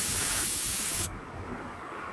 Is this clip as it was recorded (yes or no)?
no